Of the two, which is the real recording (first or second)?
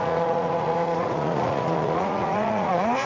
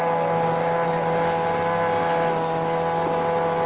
second